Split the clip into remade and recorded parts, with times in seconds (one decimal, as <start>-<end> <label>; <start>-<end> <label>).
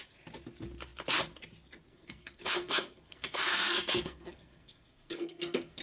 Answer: 0.0-1.9 recorded; 1.9-5.8 remade